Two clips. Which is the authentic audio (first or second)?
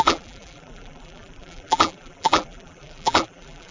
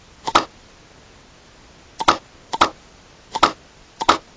second